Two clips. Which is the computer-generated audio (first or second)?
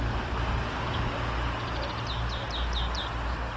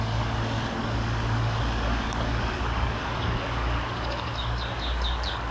second